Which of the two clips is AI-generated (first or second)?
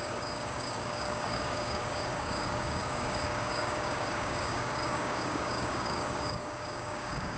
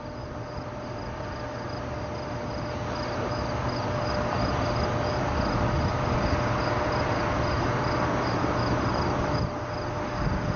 first